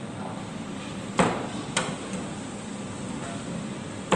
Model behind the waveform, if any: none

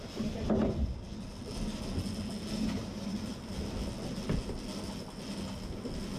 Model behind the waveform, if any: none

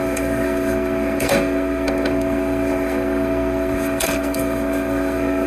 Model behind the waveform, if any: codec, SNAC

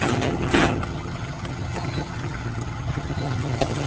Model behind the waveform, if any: vocoder, HiFi-GAN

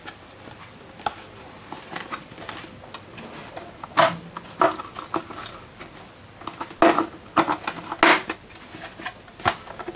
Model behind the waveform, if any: none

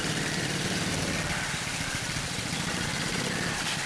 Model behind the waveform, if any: vocoder, BigVGAN v2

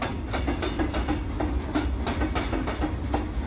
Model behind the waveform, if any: none